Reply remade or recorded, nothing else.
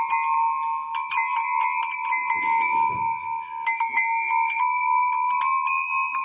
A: recorded